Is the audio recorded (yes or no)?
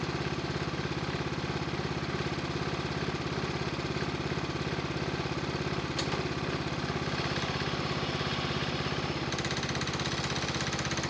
yes